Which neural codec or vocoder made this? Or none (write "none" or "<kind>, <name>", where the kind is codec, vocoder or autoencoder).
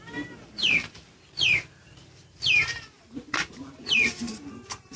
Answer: vocoder, BigVGAN v2